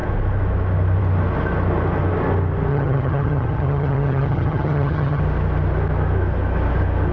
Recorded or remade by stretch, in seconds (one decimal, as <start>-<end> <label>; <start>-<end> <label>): 0.0-2.7 recorded; 2.7-5.2 remade; 5.2-7.1 recorded